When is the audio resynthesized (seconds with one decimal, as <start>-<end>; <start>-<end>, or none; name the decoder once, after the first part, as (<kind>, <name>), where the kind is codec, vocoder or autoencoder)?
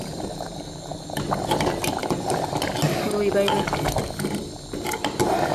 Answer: 0.0-0.9 (vocoder, BigVGAN v2); 1.4-2.0